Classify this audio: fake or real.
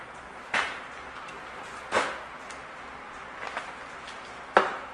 real